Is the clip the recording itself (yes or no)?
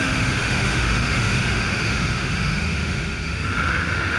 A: no